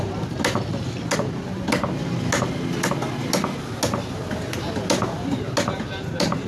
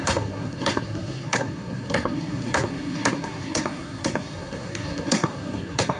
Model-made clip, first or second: second